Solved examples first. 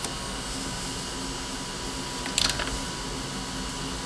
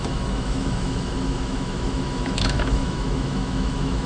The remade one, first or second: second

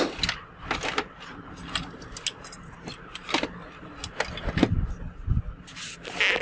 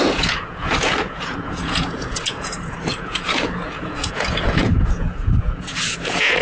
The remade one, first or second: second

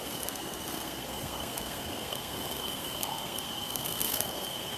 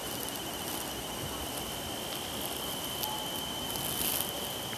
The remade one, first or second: first